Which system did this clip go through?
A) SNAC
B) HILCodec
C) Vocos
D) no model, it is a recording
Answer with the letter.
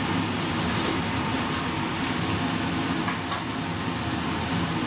D